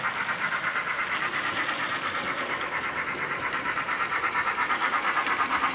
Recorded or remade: recorded